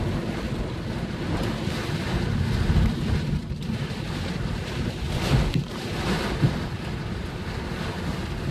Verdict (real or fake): real